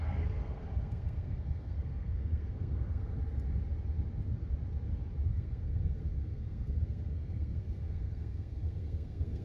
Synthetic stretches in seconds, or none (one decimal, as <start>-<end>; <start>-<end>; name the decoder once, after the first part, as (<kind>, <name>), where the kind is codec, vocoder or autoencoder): 0.0-3.1 (codec, SNAC); 5.3-9.4